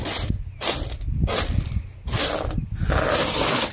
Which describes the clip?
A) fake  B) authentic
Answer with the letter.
B